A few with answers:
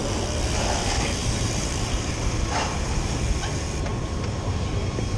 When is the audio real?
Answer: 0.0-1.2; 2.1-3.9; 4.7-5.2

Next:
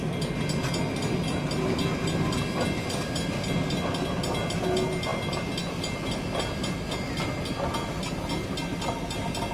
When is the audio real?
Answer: 0.0-9.5

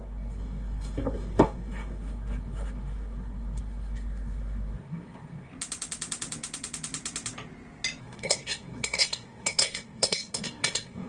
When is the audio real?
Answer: 5.5-8.0

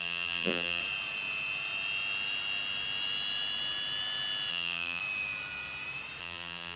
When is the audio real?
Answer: 0.8-4.5; 5.0-6.2

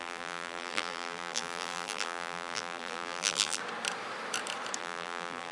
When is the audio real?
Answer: 3.6-4.8

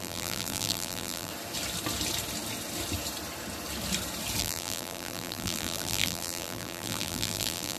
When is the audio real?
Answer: 1.3-4.4

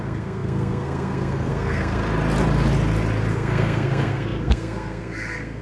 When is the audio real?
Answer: 2.0-3.3